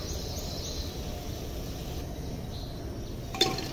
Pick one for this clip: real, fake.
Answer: real